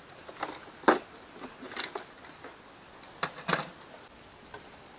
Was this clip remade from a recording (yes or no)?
no